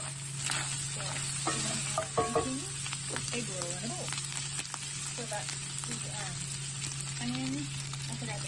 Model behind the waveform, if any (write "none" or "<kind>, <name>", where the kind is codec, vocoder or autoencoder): none